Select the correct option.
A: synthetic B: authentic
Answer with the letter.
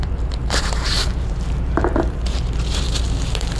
A